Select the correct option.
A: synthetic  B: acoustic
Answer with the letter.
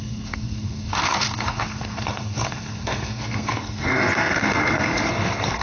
A